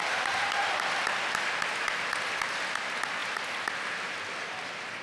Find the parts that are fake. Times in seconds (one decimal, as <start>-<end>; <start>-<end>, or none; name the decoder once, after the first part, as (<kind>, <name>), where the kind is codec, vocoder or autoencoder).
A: none